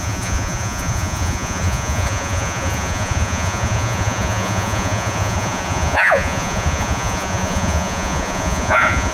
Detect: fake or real fake